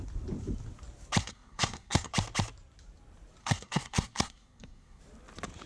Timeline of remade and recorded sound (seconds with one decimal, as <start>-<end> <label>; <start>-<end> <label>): 0.0-1.2 recorded; 1.2-2.1 remade; 2.1-3.4 recorded; 3.4-5.0 remade; 5.0-5.7 recorded